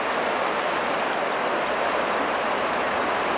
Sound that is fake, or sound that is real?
real